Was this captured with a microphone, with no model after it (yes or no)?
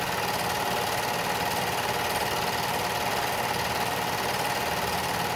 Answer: yes